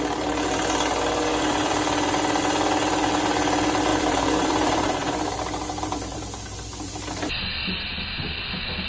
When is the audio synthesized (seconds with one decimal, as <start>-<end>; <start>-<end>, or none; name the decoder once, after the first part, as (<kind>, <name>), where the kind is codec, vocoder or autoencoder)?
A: 1.3-2.4 (vocoder, BigVGAN v2); 3.9-5.8